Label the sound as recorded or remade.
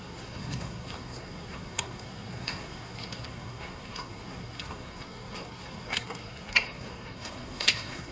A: remade